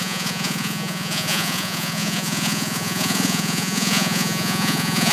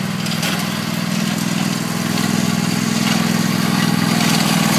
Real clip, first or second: second